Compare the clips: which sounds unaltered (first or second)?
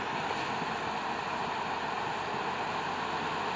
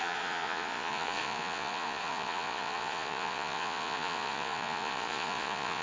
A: first